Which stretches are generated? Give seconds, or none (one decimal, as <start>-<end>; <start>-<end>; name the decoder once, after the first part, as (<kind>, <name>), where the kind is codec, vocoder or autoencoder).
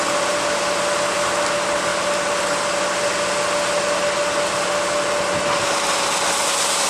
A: none